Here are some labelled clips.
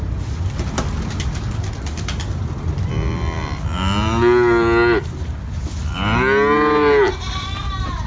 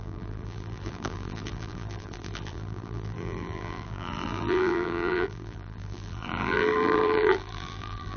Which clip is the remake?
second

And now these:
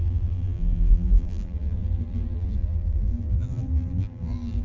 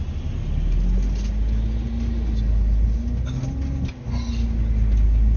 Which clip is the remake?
first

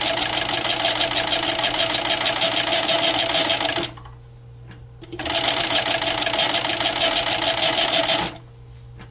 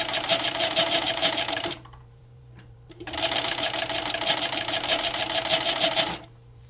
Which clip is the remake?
second